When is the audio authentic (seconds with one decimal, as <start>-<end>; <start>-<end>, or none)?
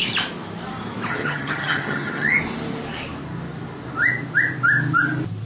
0.0-1.1; 2.4-5.5